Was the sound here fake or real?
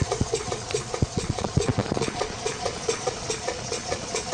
fake